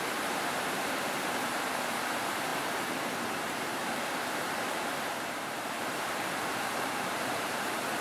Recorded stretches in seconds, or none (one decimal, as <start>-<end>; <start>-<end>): none